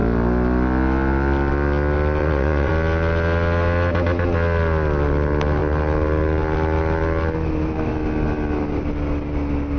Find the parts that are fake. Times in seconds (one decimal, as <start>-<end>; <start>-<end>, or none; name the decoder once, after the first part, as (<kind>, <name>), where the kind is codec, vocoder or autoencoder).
2.2-2.7 (vocoder, WaveNeXt)